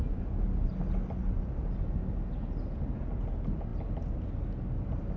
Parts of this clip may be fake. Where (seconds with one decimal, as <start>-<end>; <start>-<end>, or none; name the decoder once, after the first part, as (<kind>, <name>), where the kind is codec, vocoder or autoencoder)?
none